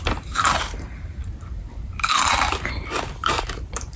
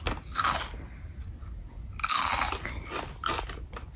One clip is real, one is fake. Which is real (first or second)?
second